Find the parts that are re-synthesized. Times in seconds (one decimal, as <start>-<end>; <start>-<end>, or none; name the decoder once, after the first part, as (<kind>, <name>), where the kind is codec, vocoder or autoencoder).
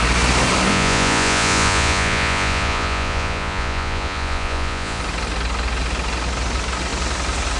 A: 0.7-5.0 (vocoder, Vocos)